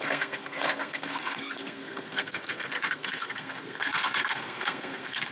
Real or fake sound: fake